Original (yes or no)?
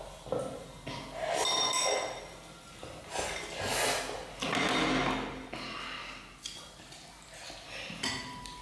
yes